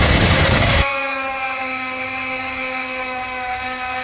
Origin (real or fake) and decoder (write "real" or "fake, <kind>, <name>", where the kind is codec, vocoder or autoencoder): fake, codec, DAC